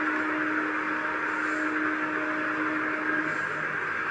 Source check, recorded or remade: recorded